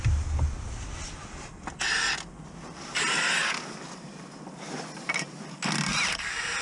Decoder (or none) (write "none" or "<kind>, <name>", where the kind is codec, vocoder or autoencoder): none